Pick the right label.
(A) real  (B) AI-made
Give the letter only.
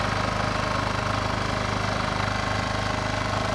A